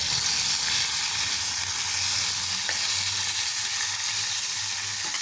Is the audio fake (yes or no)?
no